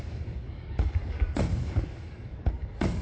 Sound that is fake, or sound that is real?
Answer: fake